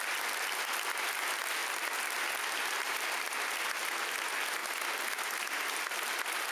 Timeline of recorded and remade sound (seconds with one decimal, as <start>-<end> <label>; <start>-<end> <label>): 0.0-6.5 recorded